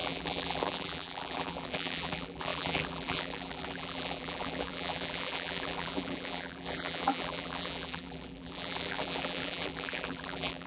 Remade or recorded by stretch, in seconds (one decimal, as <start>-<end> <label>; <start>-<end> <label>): 0.0-10.7 remade